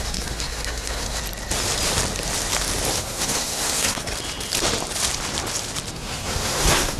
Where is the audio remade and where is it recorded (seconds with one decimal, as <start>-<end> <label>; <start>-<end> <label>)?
0.0-1.2 remade; 1.2-3.0 recorded; 3.0-4.1 remade; 4.1-5.9 recorded; 5.9-7.0 remade